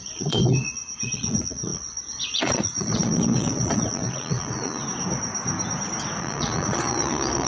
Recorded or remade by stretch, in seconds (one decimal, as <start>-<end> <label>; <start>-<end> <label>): 0.0-4.8 remade; 4.8-6.2 recorded; 6.2-7.5 remade